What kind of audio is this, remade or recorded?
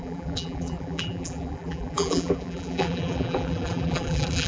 remade